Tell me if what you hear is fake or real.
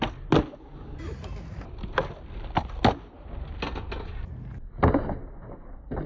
real